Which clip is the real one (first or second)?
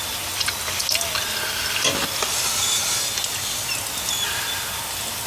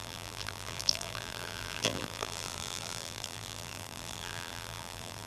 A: first